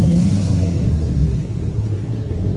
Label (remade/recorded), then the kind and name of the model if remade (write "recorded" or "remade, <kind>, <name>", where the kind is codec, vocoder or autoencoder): remade, codec, SNAC